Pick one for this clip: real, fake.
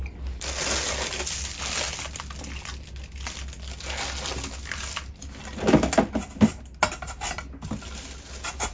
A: real